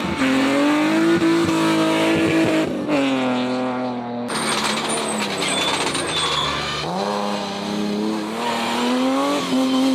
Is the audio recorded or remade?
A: recorded